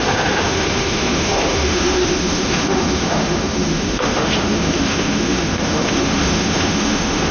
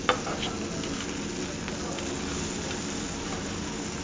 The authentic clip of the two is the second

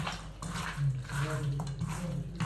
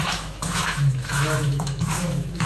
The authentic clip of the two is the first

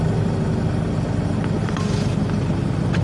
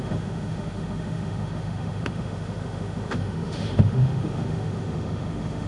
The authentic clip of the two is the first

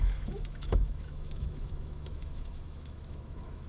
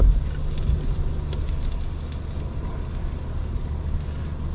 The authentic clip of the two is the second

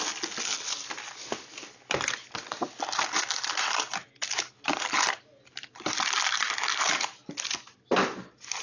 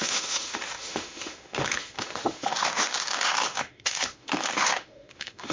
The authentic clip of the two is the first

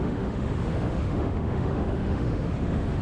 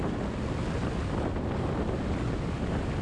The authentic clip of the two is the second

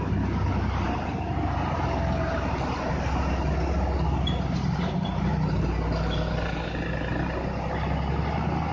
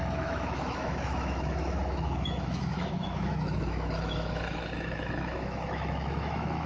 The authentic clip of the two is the first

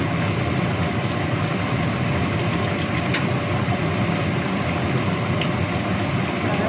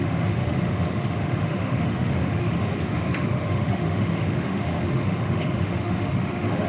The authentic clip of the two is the first